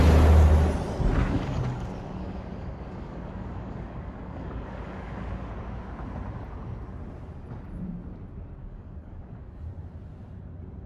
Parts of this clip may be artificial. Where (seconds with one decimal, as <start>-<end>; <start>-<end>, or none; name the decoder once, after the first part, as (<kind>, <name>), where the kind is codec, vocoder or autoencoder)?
1.2-5.5 (codec, DAC); 8.6-9.7